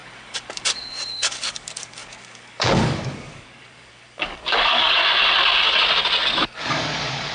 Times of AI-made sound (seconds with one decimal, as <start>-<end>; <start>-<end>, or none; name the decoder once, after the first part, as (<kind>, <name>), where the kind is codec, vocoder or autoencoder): 0.0-5.0 (codec, DAC); 6.7-7.3